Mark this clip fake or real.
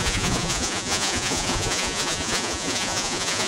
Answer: fake